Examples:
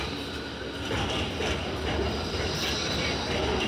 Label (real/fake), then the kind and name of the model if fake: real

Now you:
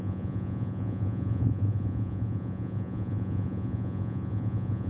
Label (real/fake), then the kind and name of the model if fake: fake, vocoder, Vocos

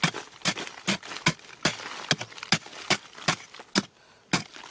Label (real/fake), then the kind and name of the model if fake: real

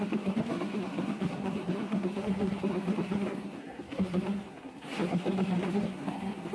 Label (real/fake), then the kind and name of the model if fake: fake, codec, SNAC